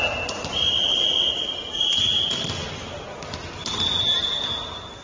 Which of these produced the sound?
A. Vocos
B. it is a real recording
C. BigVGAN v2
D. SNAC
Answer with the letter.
B